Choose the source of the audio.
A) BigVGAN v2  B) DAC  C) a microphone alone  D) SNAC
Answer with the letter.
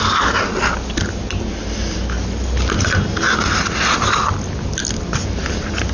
C